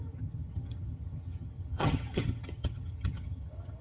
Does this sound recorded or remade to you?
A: remade